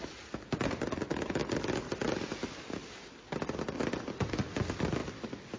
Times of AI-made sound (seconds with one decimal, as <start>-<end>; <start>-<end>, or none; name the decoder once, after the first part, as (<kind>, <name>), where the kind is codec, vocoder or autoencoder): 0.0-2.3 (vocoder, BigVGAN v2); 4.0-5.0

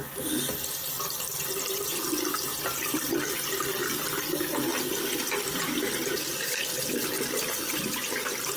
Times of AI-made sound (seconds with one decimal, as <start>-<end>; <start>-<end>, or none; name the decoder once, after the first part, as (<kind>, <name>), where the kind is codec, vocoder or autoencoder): 2.5-3.1 (vocoder, BigVGAN v2); 3.8-4.3; 4.7-8.6

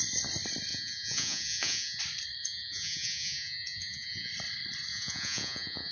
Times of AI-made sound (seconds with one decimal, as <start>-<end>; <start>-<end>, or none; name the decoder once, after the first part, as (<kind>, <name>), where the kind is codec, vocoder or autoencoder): 0.7-2.0 (vocoder, Vocos); 2.4-4.3; 4.9-5.9

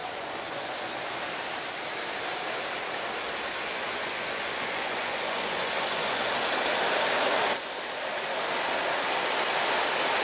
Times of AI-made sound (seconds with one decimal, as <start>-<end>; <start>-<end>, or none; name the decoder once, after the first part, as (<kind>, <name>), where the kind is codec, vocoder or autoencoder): 0.0-1.2 (vocoder, Vocos); 3.7-6.3

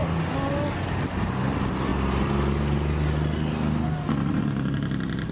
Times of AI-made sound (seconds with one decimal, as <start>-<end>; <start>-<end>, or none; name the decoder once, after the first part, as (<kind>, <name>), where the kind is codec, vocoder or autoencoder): none

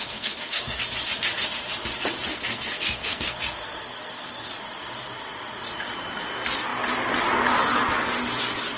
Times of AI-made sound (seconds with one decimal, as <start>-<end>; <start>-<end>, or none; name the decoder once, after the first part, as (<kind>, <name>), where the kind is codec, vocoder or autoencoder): 0.0-0.8 (codec, SNAC); 2.3-4.5